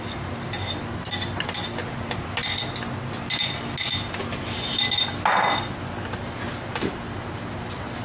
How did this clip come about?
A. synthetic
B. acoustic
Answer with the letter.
B